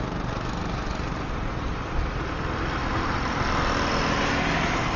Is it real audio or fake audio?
real